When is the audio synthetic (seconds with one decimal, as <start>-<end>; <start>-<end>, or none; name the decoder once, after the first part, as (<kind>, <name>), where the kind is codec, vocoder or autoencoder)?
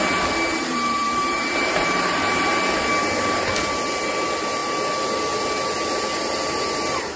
0.5-2.5 (vocoder, BigVGAN v2)